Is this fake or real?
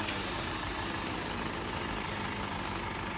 real